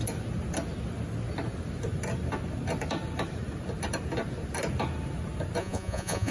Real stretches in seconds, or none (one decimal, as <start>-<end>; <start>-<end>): 0.0-5.6